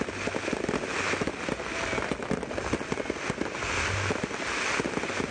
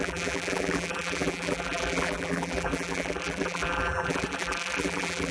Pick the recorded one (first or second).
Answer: first